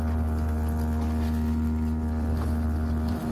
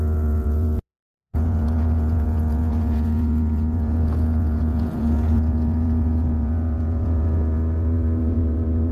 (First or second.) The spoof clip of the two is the second